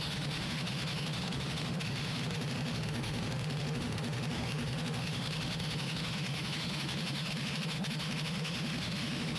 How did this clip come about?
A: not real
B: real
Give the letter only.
A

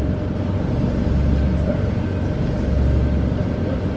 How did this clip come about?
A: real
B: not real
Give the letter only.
A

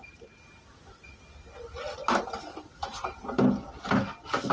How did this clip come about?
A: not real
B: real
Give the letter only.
B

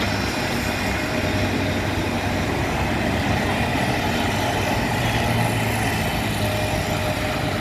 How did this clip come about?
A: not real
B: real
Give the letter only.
B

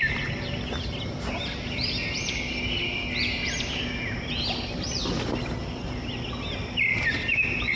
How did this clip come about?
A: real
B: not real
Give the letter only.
A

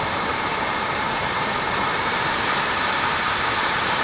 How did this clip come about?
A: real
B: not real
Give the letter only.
B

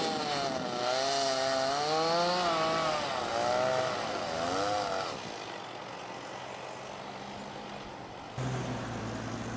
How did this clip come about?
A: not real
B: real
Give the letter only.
B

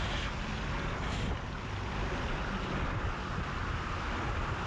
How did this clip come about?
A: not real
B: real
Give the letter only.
B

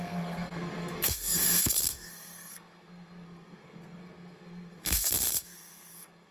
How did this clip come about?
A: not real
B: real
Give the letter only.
A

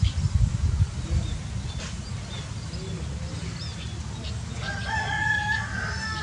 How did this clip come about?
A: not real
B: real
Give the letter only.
B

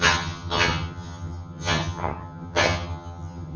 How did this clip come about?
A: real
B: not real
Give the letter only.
B